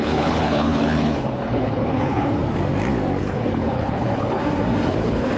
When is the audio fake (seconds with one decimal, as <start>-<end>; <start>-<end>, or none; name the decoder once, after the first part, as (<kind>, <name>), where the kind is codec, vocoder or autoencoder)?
0.0-2.4 (codec, HILCodec); 3.2-4.4; 4.9-5.4